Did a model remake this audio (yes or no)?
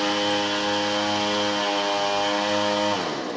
no